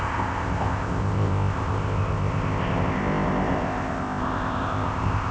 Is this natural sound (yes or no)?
no